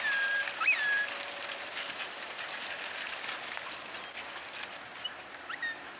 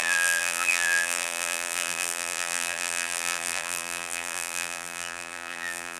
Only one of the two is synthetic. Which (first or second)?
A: second